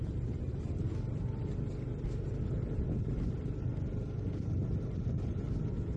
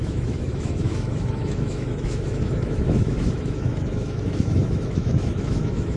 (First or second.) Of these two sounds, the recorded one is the first